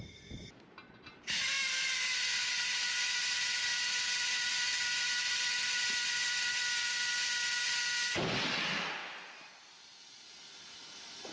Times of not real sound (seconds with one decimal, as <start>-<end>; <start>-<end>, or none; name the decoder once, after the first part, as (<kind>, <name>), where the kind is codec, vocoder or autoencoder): none